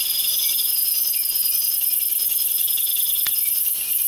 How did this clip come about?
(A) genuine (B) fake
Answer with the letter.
A